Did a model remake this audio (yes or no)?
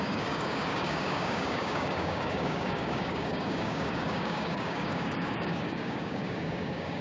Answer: yes